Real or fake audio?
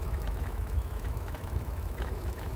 fake